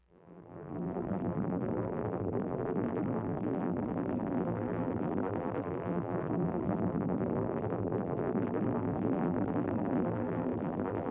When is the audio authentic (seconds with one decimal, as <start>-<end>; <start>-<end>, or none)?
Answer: none